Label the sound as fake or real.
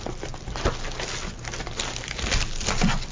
real